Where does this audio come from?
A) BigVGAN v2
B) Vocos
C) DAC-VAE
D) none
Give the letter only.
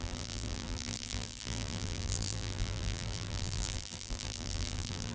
A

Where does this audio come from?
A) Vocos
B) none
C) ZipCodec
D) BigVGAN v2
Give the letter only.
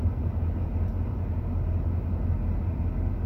B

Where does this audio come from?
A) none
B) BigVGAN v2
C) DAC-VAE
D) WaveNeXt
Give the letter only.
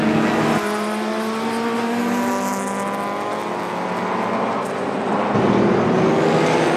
A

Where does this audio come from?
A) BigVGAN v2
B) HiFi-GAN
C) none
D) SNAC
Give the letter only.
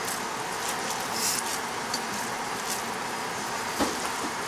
C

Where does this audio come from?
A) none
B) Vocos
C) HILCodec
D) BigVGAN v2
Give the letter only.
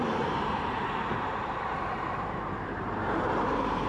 D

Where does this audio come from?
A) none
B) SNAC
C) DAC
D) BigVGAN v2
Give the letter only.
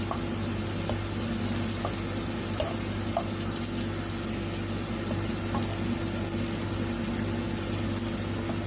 A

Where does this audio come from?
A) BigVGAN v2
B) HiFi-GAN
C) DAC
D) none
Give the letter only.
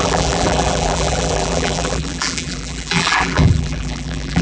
A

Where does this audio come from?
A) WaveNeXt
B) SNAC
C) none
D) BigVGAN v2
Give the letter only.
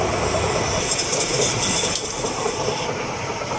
D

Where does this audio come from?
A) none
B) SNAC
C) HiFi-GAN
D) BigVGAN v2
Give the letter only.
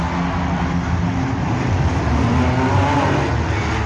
A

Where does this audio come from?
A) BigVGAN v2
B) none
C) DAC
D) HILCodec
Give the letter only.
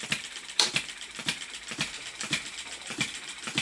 A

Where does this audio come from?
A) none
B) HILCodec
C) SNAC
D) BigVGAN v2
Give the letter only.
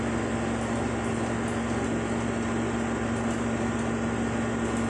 A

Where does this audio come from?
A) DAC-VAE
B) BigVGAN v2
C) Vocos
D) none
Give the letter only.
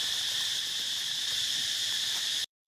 B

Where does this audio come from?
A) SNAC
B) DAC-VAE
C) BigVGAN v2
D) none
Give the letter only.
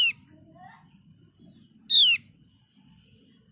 D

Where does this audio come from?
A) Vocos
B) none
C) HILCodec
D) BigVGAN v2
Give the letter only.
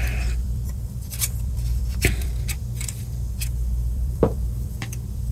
D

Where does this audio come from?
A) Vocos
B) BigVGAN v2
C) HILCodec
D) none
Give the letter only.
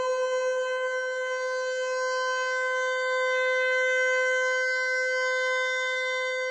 D